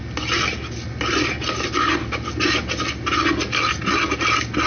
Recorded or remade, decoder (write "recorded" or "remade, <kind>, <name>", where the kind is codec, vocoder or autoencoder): recorded